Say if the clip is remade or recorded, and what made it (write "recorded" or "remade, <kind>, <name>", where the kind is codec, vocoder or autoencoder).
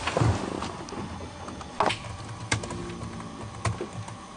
recorded